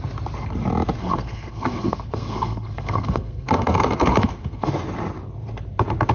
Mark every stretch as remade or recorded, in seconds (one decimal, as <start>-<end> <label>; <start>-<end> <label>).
0.0-1.0 recorded; 1.0-4.7 remade; 4.7-6.1 recorded